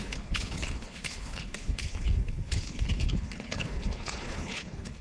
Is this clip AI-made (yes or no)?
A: yes